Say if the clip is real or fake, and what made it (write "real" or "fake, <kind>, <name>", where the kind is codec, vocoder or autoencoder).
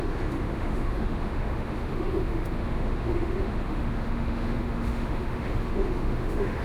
fake, autoencoder, DAC-VAE